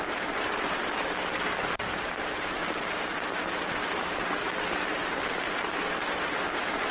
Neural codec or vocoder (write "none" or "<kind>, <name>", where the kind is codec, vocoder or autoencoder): none